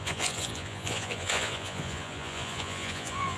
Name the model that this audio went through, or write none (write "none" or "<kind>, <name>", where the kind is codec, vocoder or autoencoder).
vocoder, Vocos